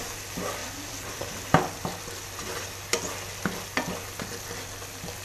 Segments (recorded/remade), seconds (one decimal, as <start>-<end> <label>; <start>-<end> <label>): 0.0-0.6 recorded; 0.6-2.0 remade; 2.0-5.2 recorded